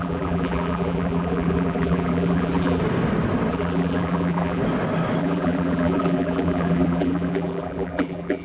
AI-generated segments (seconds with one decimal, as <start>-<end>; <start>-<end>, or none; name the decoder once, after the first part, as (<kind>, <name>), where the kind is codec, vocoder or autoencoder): 0.0-2.8 (vocoder, BigVGAN v2); 3.5-4.6; 5.2-8.4